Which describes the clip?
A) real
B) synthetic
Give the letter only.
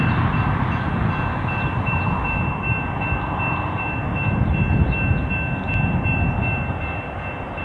B